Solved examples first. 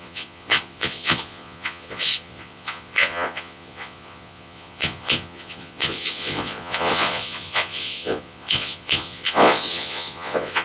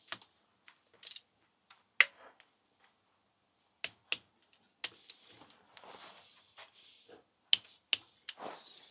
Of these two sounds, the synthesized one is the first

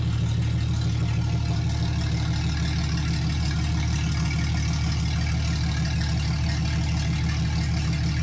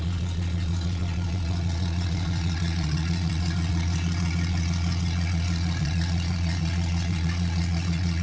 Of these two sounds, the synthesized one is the second